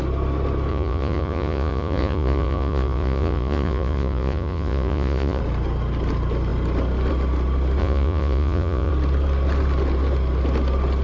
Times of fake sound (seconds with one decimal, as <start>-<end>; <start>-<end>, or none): 0.7-5.4; 7.8-8.9